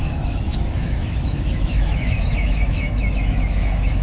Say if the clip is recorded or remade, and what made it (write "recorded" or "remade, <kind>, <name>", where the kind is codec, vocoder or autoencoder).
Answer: remade, autoencoder, DAC-VAE